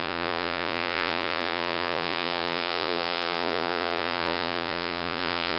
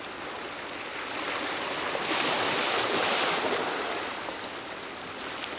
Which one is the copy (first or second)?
first